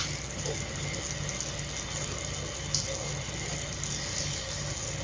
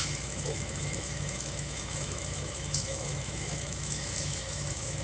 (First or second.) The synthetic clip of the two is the second